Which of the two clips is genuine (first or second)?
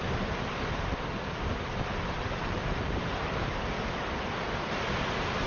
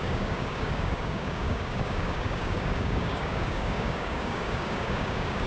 first